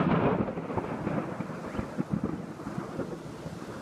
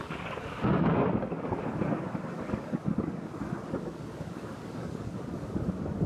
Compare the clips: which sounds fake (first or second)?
second